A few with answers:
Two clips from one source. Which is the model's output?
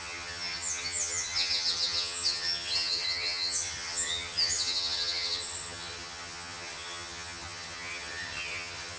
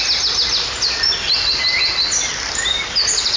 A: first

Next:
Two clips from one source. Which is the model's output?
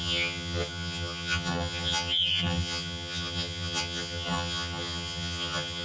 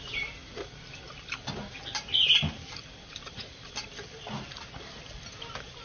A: first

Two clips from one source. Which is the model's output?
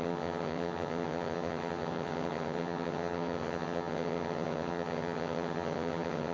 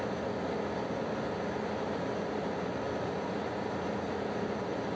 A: first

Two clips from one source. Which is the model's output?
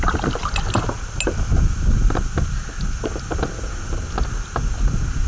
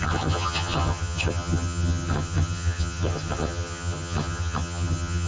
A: second